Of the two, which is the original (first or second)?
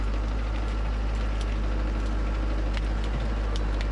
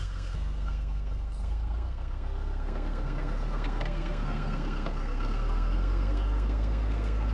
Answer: first